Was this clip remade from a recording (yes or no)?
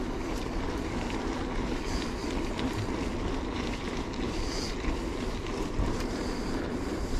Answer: no